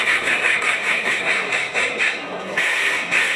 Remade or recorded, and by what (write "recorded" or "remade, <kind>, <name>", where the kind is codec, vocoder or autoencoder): remade, codec, SNAC